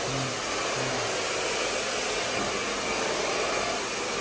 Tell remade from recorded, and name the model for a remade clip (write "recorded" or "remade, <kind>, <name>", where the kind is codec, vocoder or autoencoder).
recorded